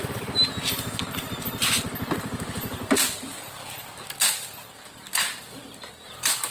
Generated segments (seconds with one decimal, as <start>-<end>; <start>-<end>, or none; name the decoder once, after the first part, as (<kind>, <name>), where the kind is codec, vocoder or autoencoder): none